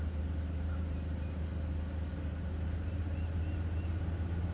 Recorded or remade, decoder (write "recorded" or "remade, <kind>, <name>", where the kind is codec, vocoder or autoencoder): recorded